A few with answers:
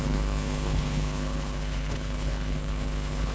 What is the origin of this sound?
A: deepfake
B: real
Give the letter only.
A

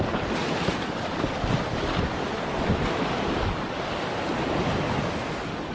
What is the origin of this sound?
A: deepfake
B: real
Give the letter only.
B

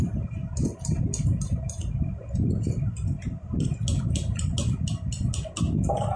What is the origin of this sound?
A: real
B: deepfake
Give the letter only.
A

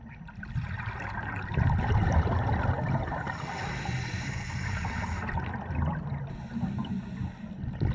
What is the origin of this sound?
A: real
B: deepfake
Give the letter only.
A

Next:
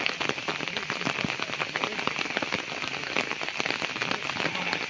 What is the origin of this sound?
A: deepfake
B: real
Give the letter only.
B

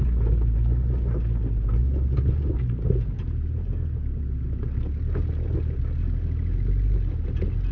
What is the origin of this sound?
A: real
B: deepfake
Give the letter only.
A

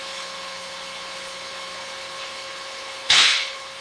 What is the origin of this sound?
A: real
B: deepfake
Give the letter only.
B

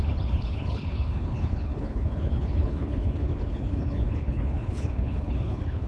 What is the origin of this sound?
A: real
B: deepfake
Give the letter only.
B